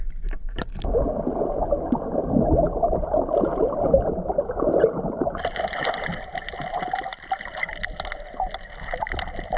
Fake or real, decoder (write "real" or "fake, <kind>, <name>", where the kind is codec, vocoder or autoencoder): real